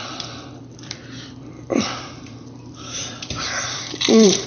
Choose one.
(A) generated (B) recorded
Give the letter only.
A